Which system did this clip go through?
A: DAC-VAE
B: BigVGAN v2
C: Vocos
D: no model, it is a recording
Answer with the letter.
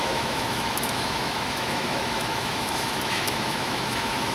A